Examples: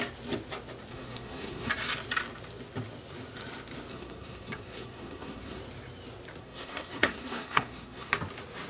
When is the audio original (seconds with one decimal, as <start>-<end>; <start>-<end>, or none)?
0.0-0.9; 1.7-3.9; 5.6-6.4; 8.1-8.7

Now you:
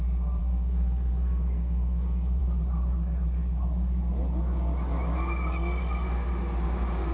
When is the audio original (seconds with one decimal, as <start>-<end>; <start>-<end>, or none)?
0.0-0.4; 2.4-7.1

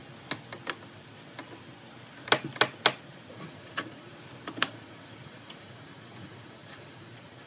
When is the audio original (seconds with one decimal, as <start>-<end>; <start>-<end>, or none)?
0.0-3.3; 4.1-4.7